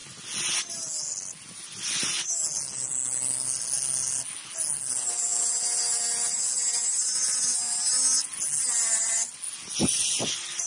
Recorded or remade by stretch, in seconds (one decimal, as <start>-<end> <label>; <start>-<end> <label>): 0.0-10.7 recorded